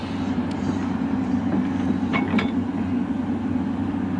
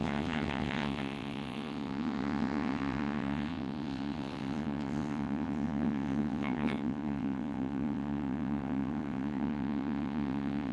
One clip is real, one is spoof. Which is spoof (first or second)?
second